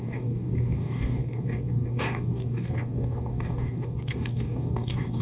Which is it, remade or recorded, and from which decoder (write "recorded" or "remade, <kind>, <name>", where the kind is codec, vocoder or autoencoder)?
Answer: remade, codec, DAC